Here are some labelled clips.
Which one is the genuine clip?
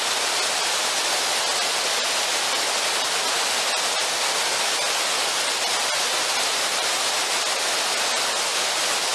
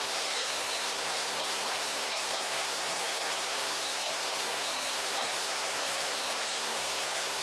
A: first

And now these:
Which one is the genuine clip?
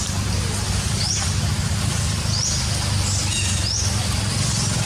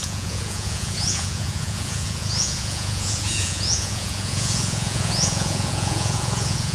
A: first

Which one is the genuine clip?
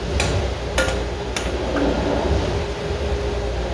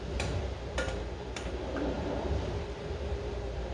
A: first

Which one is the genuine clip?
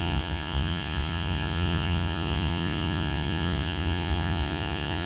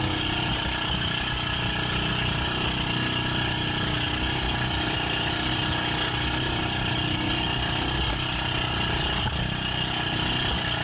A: second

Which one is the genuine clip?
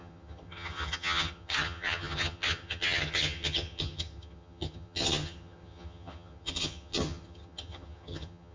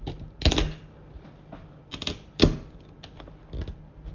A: second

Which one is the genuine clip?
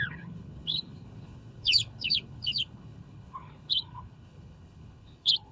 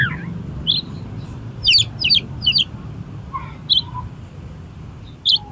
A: second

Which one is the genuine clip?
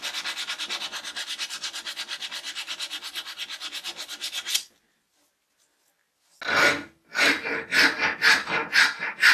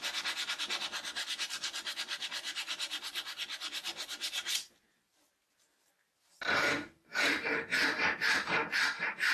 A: first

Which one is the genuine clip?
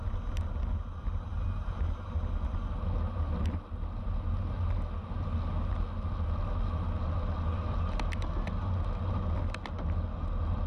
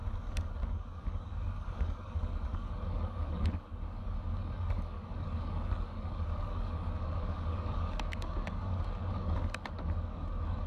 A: first